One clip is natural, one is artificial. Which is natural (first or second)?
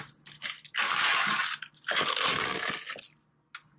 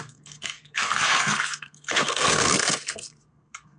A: first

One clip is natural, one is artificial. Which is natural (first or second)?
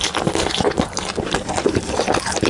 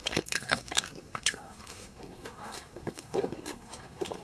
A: first